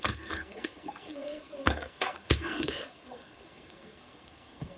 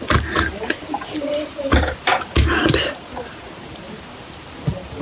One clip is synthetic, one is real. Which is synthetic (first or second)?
first